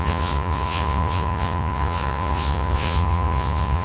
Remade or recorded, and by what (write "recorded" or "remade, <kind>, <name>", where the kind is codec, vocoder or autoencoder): remade, vocoder, Vocos